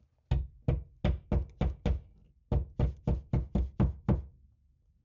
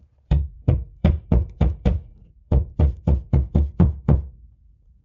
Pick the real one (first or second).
first